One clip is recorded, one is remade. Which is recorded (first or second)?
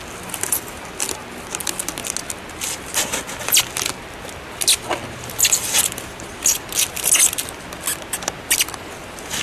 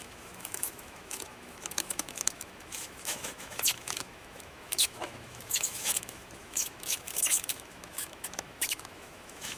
first